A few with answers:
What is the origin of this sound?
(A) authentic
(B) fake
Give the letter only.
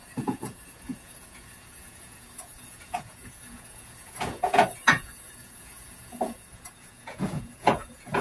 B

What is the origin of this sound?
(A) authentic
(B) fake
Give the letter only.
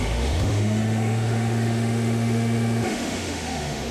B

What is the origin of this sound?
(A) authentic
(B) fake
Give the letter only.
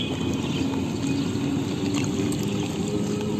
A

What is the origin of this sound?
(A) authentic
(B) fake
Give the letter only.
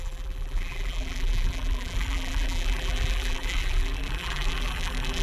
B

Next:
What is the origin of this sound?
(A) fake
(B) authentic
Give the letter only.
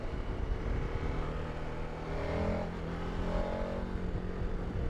B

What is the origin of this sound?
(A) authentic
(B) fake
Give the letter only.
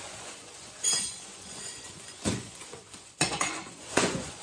B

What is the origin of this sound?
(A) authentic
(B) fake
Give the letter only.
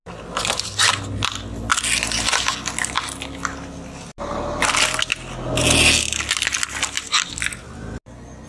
A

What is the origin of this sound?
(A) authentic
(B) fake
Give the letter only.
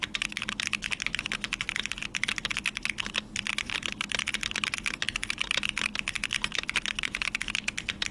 A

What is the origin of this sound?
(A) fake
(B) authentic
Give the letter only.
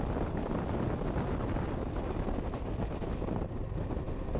B